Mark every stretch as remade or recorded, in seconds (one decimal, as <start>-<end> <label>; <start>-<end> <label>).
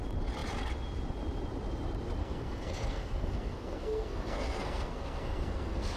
0.0-2.2 recorded; 2.2-6.0 remade